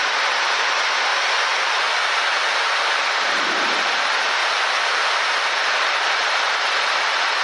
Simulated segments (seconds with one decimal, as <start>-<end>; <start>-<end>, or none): 0.0-1.1; 3.0-4.4; 5.5-7.4